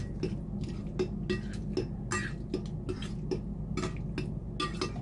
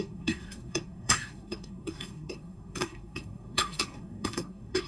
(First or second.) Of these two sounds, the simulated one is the second